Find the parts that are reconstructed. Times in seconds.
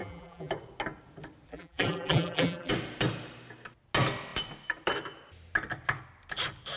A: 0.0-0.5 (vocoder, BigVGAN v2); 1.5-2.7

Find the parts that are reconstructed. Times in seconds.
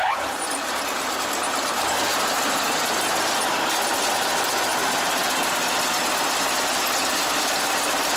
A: none